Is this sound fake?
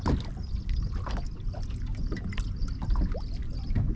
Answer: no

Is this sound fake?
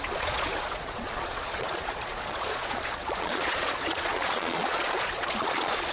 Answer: yes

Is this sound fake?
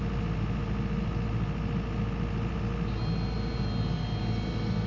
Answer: no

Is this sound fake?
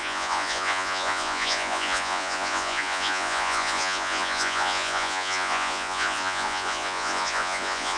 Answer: yes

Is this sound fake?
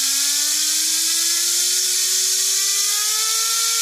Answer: no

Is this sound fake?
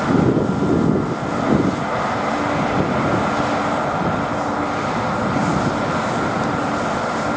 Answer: no